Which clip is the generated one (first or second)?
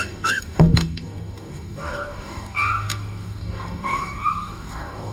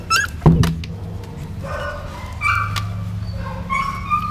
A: first